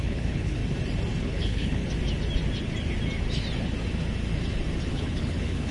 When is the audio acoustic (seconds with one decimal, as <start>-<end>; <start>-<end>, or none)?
0.6-1.2; 1.8-4.9